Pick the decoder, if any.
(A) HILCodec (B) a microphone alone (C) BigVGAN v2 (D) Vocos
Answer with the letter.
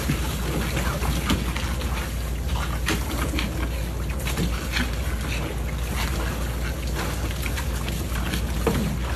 B